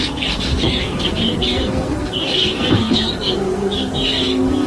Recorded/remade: remade